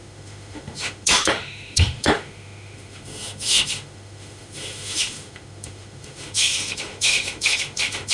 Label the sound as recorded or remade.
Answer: remade